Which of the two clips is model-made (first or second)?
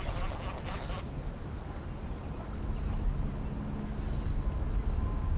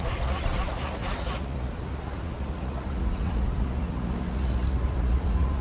second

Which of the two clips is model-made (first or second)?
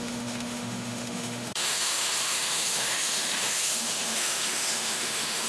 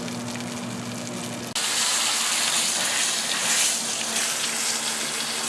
first